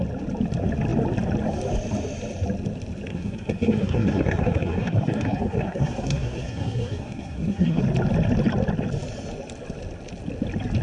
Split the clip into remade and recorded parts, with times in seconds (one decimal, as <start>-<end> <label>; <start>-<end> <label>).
0.0-3.1 recorded; 3.1-7.8 remade; 7.8-10.8 recorded